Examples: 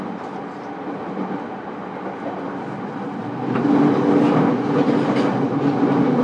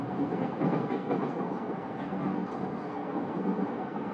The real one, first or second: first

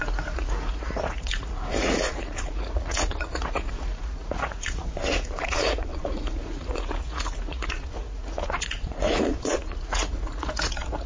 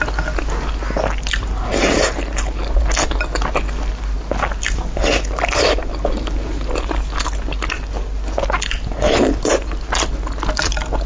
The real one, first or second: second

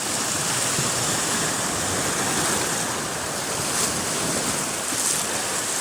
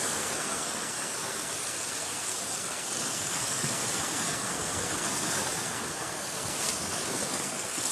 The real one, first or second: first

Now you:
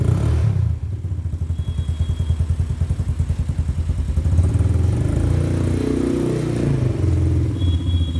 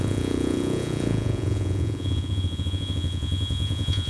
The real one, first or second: first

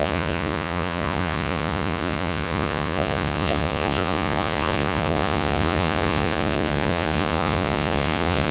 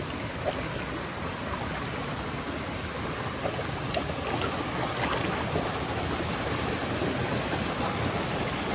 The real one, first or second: second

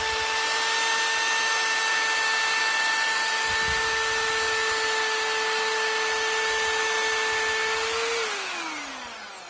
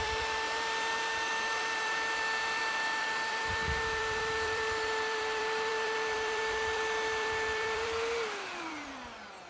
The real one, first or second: first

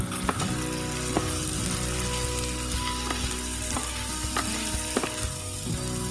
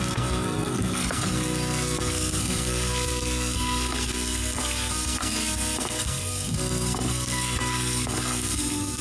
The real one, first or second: first